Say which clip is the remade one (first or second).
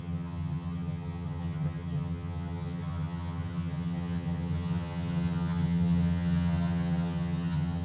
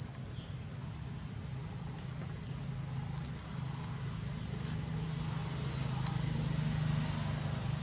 first